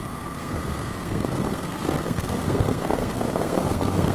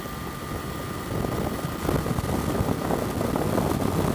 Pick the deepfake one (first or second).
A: first